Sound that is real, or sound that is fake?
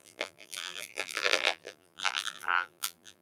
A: fake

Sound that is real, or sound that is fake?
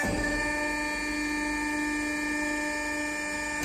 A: real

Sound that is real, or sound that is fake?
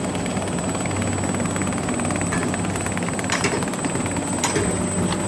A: real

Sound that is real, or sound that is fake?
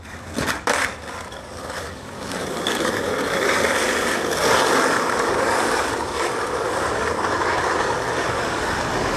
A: fake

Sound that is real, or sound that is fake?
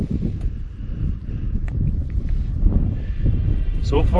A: fake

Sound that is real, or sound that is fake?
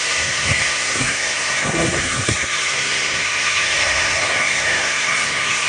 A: fake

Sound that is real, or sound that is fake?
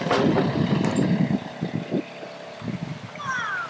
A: real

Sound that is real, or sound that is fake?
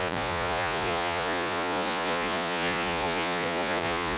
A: fake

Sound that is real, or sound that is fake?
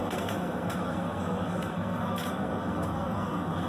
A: fake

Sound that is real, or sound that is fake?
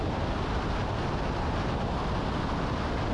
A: real